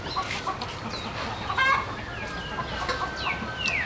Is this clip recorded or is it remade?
recorded